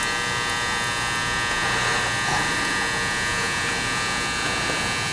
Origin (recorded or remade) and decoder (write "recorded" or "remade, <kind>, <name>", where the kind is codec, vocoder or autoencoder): recorded